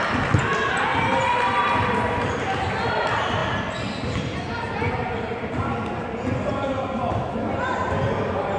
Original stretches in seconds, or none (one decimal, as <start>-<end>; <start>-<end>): 0.0-8.6